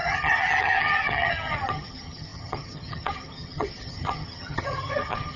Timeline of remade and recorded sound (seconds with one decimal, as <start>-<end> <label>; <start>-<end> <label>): 0.0-5.4 remade